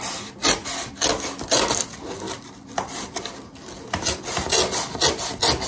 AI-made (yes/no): no